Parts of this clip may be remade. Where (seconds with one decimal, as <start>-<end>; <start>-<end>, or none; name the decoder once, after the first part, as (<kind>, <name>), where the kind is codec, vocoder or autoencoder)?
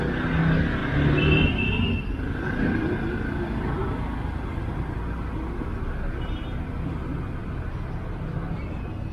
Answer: 0.8-2.4 (vocoder, BigVGAN v2); 7.4-8.7